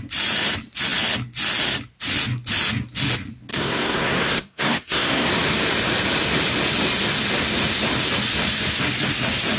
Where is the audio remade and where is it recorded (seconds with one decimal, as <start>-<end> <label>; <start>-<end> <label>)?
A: 0.0-3.5 recorded; 3.5-5.3 remade; 5.3-9.6 recorded